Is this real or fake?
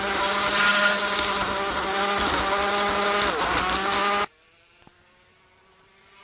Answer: real